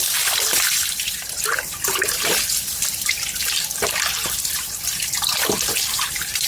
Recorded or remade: recorded